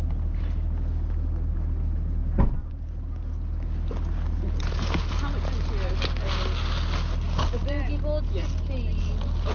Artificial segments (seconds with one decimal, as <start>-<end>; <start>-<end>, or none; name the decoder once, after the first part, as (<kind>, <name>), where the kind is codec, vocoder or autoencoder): none